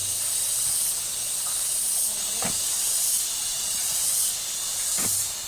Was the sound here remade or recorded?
recorded